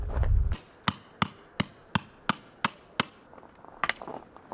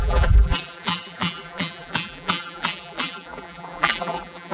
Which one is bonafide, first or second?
first